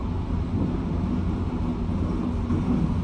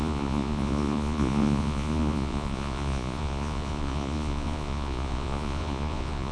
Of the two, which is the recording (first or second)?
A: first